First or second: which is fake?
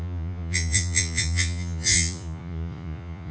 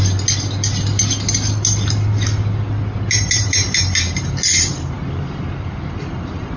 first